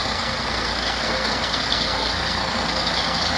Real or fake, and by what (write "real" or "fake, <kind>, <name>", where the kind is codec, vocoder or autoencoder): fake, codec, SNAC